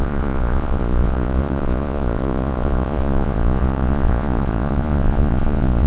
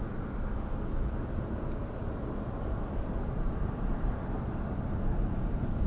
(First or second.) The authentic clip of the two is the second